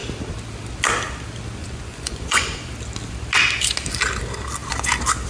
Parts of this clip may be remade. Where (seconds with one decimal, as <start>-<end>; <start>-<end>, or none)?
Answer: 1.6-2.7